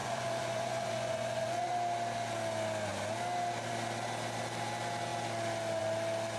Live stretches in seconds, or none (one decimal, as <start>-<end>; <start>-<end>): 1.7-6.4